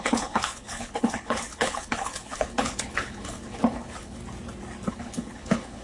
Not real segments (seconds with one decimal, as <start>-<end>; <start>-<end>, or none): 0.0-4.2; 4.9-5.8

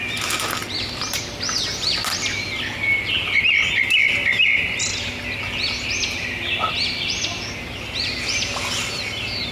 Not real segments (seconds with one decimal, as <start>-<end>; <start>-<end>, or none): none

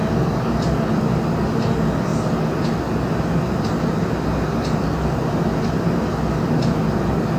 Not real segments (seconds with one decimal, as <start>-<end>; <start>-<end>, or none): none

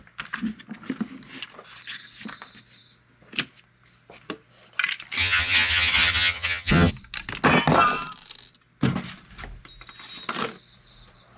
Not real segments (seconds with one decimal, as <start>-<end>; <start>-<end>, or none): 5.2-6.9

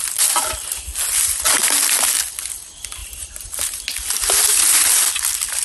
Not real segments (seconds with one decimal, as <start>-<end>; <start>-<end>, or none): 3.0-3.8

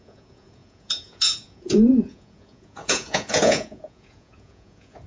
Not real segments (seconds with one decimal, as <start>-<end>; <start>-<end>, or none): 0.0-5.1

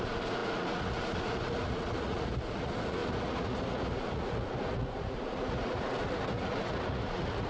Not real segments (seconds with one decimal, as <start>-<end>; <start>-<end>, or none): 0.0-7.5

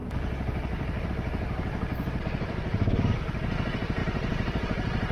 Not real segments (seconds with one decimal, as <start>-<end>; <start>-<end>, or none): 0.0-1.1; 1.9-3.3; 4.0-5.1